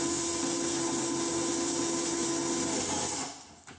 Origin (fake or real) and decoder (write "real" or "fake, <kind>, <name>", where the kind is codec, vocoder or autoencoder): real